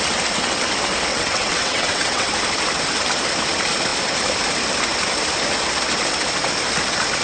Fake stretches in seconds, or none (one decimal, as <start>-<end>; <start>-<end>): 1.1-2.3